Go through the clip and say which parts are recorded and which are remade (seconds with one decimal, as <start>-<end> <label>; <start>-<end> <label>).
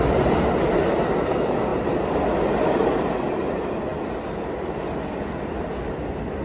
0.0-6.4 recorded